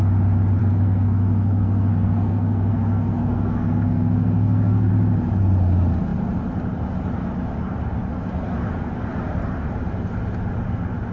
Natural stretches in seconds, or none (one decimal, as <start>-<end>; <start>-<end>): 0.0-0.6; 4.9-11.1